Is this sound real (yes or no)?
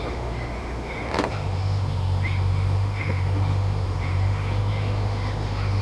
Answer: no